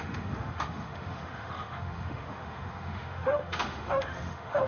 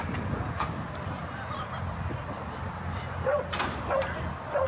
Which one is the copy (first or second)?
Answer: first